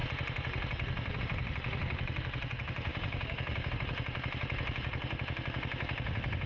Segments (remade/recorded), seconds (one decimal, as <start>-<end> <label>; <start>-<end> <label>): 0.0-2.9 recorded; 2.9-3.7 remade; 3.7-6.5 recorded